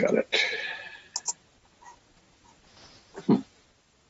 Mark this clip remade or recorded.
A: recorded